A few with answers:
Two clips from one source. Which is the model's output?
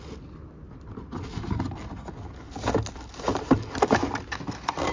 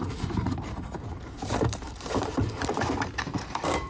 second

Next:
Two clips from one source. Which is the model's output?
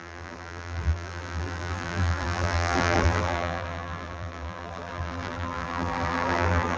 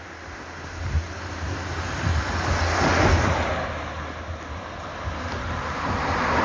first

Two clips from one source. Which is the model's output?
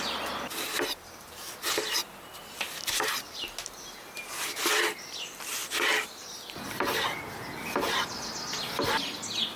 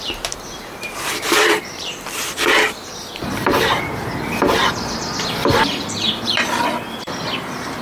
second